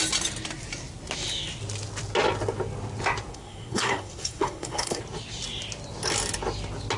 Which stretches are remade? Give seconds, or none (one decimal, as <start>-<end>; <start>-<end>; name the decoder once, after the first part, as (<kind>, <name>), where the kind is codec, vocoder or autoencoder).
3.3-5.0 (codec, SNAC)